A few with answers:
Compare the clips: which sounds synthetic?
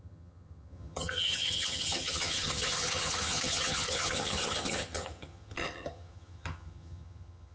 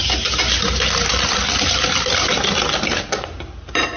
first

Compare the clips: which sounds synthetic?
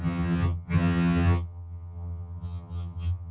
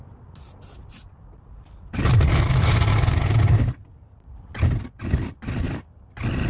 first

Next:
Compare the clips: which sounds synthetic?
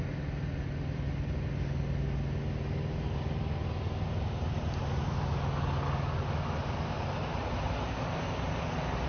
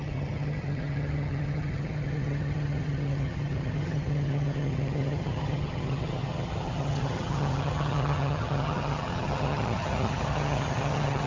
second